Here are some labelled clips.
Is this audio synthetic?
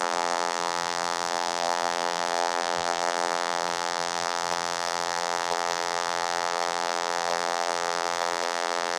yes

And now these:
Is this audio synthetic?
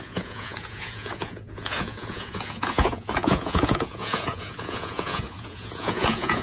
yes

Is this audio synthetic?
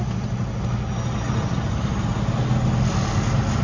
no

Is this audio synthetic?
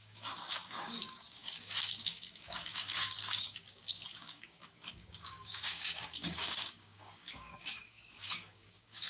yes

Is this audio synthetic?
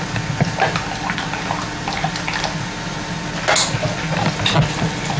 no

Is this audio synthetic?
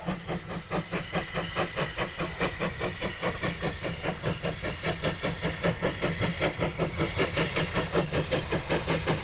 no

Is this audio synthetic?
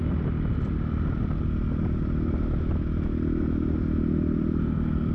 no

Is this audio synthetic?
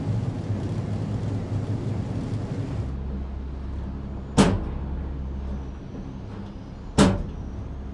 no